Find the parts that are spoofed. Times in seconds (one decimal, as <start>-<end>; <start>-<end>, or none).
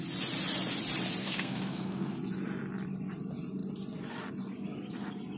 1.2-2.1